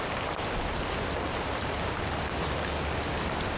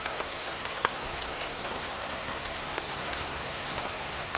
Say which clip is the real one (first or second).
first